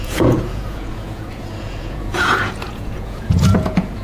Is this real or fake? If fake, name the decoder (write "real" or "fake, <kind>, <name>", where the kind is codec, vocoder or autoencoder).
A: fake, vocoder, Vocos